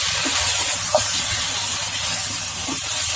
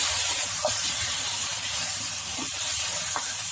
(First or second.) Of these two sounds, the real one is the first